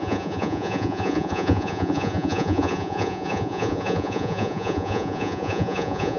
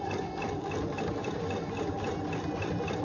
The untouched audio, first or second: second